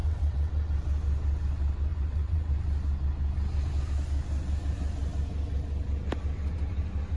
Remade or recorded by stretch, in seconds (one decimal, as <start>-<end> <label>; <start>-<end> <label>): 0.0-0.7 remade; 0.7-1.9 recorded; 1.9-2.5 remade; 2.5-7.2 recorded